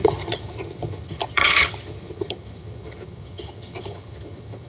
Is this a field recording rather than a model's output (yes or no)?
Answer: no